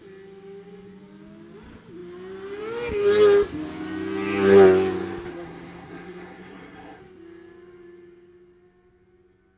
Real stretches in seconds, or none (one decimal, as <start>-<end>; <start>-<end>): 0.0-5.3; 7.0-9.6